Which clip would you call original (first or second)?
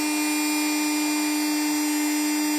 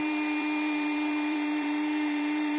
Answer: first